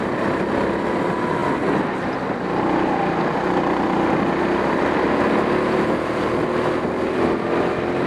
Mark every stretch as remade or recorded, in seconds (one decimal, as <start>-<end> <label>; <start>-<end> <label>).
0.0-8.1 recorded